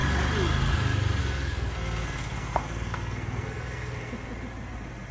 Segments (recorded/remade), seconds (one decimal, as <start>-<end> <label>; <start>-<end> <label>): 0.0-1.2 recorded; 1.2-4.3 remade; 4.3-5.1 recorded